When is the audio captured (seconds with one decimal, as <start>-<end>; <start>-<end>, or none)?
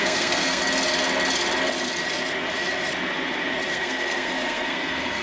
0.6-3.7